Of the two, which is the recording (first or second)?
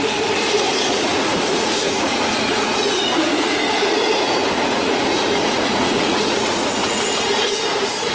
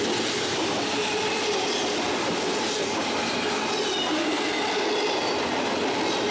second